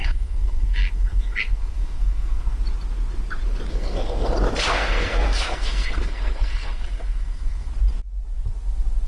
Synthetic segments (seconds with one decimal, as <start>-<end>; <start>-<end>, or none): 0.0-2.6; 3.7-4.3; 4.7-7.7